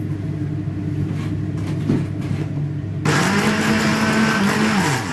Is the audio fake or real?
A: real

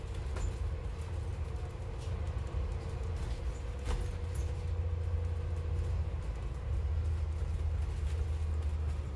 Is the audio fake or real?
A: real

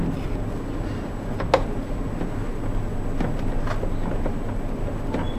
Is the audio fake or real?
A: real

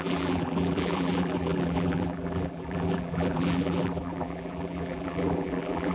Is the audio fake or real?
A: fake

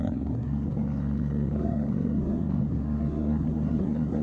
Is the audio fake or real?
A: fake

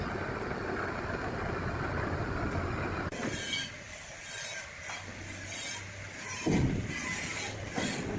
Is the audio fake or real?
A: real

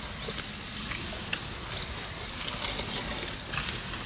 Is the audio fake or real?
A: real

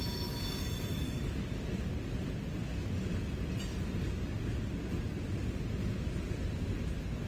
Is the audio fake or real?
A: real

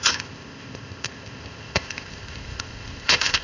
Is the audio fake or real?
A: fake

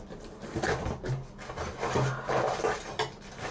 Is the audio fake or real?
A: real